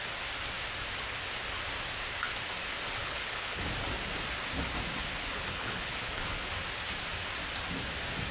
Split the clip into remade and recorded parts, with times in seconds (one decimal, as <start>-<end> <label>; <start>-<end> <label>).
0.0-3.0 recorded; 3.0-3.6 remade; 3.6-5.3 recorded; 5.3-6.5 remade; 6.5-8.3 recorded